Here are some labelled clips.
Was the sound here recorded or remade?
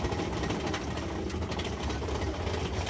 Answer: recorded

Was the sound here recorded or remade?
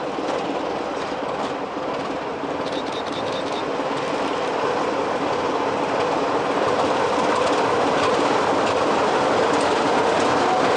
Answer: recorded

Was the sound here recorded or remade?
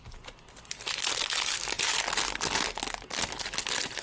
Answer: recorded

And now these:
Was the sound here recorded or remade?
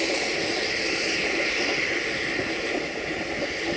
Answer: recorded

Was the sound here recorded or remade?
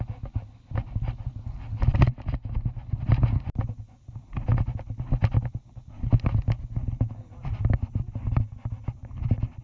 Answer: recorded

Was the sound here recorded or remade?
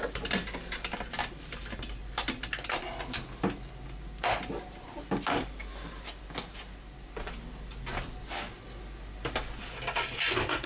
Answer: recorded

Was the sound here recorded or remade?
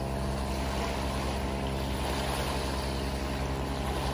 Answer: recorded